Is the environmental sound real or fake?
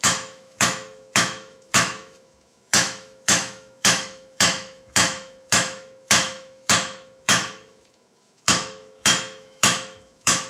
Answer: fake